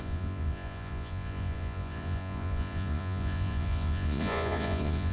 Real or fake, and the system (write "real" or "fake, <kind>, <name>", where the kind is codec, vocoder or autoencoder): fake, vocoder, Vocos